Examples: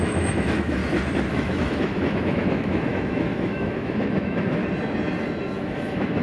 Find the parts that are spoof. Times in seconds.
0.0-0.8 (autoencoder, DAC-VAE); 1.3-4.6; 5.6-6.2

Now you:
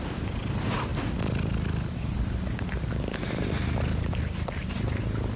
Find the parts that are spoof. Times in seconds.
none

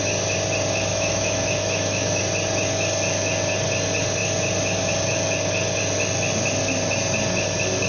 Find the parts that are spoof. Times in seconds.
0.9-2.2 (autoencoder, DAC-VAE)

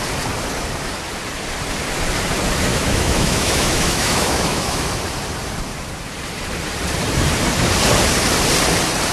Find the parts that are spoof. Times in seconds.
2.7-4.9 (autoencoder, DAC-VAE)

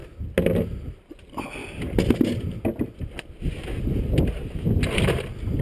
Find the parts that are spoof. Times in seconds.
none